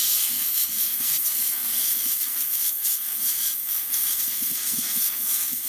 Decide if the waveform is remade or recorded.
remade